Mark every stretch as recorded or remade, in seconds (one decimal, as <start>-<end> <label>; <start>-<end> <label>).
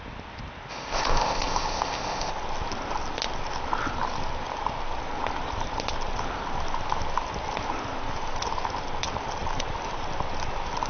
0.0-0.7 recorded; 0.7-2.3 remade; 2.3-10.9 recorded